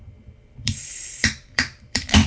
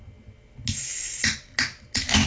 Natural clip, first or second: second